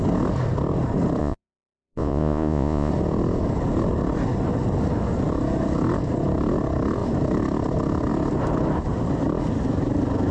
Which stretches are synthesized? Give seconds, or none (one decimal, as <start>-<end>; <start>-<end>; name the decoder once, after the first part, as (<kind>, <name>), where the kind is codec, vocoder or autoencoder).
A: 1.2-2.9 (vocoder, Vocos)